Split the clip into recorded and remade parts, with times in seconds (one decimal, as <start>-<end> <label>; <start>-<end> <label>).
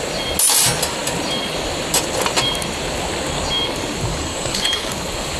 0.0-4.1 recorded; 4.1-4.9 remade; 4.9-5.4 recorded